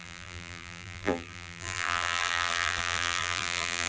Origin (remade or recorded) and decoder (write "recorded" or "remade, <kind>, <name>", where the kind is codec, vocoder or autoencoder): remade, vocoder, BigVGAN v2